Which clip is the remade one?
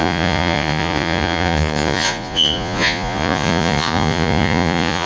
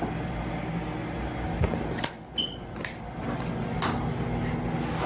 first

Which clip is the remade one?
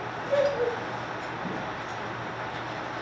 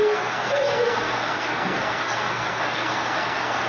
second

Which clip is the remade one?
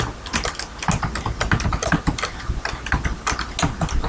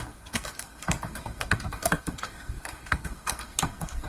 second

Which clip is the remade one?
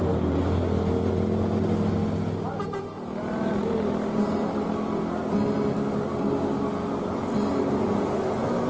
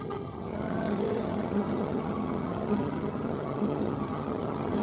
second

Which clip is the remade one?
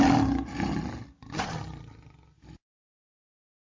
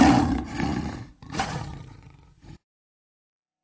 second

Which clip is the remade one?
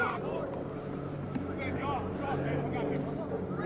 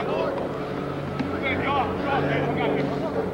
first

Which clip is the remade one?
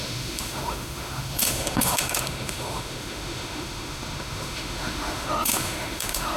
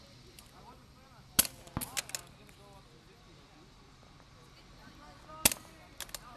first